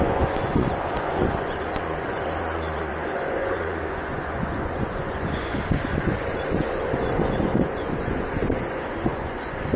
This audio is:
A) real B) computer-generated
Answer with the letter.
B